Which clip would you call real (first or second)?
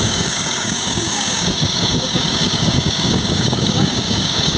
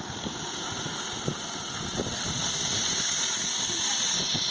second